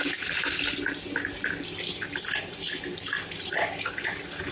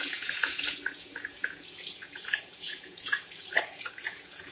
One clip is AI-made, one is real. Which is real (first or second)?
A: first